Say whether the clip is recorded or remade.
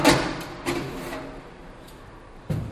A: recorded